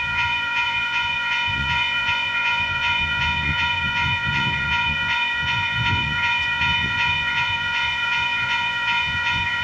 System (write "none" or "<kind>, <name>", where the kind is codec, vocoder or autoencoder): vocoder, Vocos